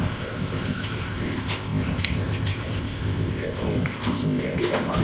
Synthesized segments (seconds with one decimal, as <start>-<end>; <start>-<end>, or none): 0.0-5.0